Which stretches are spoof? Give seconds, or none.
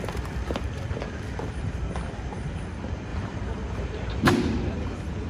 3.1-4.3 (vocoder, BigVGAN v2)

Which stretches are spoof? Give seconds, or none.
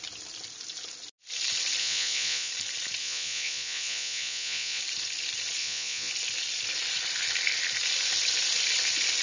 1.8-2.5 (vocoder, Vocos); 3.0-4.8; 5.6-6.1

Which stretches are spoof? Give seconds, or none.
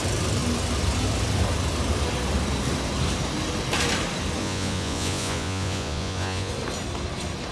4.4-6.5 (vocoder, Vocos)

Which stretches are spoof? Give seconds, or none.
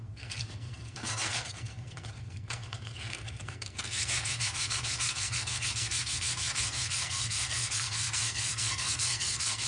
0.0-9.7 (codec, SNAC)